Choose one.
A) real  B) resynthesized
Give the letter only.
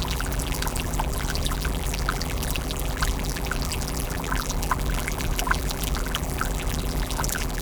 B